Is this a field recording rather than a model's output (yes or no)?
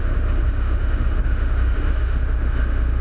no